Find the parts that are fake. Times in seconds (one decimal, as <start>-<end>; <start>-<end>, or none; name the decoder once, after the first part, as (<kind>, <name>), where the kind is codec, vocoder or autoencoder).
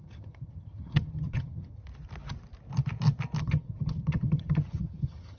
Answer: 0.0-1.8 (vocoder, HiFi-GAN); 3.4-5.4